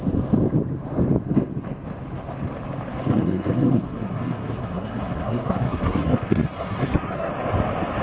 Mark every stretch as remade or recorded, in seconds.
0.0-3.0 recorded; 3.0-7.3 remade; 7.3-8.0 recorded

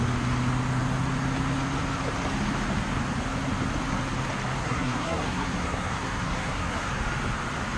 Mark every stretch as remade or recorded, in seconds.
0.0-4.6 recorded; 4.6-6.9 remade; 6.9-7.8 recorded

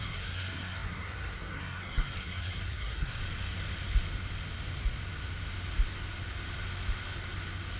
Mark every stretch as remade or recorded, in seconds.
0.0-3.2 remade; 3.2-7.8 recorded